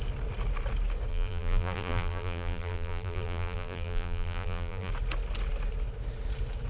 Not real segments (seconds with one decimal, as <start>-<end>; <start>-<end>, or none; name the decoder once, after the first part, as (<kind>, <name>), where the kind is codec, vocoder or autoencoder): 1.1-4.9 (vocoder, BigVGAN v2)